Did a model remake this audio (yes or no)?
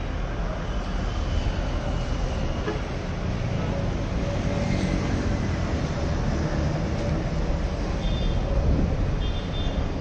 no